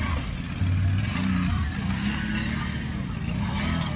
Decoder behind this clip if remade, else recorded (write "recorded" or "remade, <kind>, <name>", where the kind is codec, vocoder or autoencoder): recorded